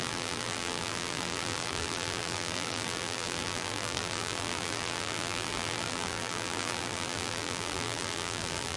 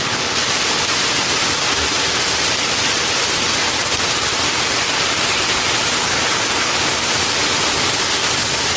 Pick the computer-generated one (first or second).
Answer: first